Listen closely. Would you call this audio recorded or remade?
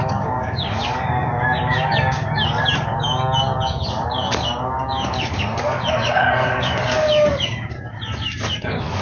remade